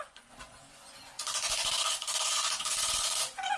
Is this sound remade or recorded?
remade